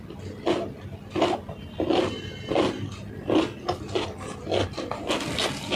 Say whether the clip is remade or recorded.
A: recorded